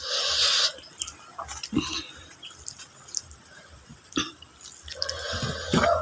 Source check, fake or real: real